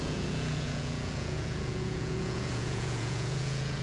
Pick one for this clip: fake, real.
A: fake